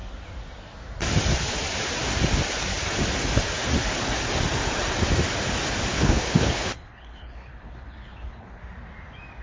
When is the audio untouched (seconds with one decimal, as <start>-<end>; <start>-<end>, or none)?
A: 0.0-5.9; 8.6-9.4